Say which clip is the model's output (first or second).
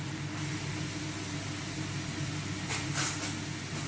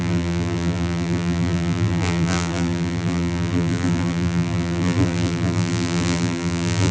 second